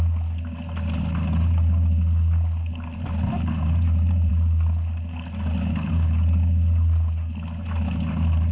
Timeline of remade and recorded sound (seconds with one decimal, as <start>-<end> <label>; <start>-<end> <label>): 0.0-8.5 recorded